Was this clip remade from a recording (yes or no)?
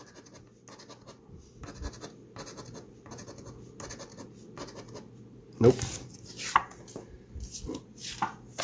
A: no